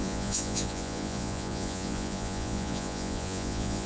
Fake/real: fake